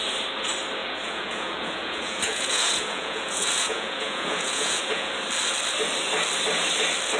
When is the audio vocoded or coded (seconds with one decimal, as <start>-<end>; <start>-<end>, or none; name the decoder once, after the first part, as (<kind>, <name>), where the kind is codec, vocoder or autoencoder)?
0.8-5.1 (vocoder, Vocos)

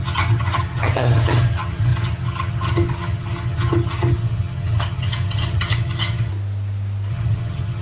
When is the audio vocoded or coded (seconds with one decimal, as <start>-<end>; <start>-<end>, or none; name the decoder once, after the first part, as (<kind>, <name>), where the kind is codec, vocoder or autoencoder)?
0.0-6.3 (vocoder, HiFi-GAN); 7.1-7.8

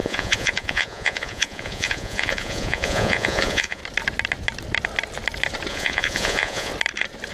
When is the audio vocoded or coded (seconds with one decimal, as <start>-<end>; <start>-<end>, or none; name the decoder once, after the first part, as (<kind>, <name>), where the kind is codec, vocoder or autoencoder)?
0.0-3.8 (vocoder, Vocos); 5.7-6.7

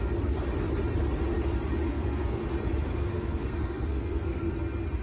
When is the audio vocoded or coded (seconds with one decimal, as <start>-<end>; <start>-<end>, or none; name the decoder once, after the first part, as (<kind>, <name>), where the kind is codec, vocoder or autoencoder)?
1.9-2.4 (codec, SNAC); 2.9-4.5

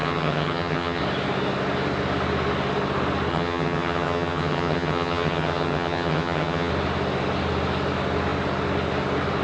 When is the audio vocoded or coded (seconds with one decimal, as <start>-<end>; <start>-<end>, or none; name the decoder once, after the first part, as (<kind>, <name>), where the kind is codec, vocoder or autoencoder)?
0.0-1.0 (vocoder, HiFi-GAN); 3.3-6.7